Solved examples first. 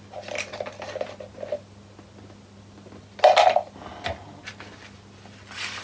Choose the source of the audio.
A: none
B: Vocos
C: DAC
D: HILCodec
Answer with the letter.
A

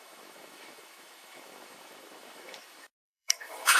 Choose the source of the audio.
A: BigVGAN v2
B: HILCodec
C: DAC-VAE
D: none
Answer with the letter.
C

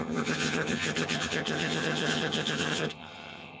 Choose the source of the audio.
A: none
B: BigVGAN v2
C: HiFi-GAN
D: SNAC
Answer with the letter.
C